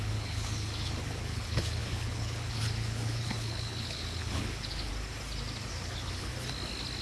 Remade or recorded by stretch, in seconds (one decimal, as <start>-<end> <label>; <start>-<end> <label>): 0.0-4.9 remade; 4.9-5.8 recorded; 5.8-6.3 remade; 6.3-7.0 recorded